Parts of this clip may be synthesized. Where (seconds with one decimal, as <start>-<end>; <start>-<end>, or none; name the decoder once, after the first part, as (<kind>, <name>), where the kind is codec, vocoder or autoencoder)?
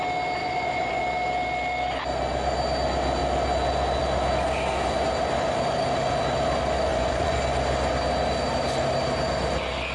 0.4-1.0 (vocoder, Vocos); 6.9-7.4